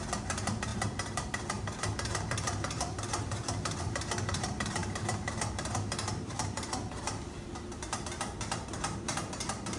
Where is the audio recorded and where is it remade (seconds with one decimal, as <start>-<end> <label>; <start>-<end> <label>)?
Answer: 0.0-9.8 remade